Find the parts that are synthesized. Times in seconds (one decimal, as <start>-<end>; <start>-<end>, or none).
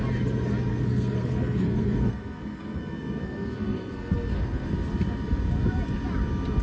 0.7-4.7